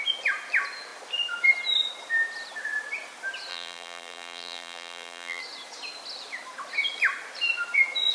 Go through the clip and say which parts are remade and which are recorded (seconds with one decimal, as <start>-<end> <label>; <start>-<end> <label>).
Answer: 0.0-3.5 recorded; 3.5-5.4 remade; 5.4-8.1 recorded